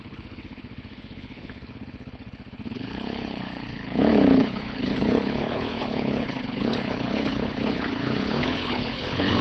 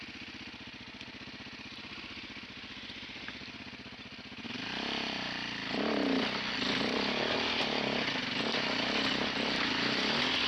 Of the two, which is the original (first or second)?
second